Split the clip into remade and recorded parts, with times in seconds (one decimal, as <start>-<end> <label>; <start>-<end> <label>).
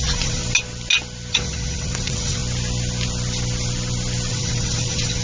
0.0-0.4 remade; 0.4-1.3 recorded; 1.3-2.4 remade; 2.4-4.3 recorded; 4.3-5.2 remade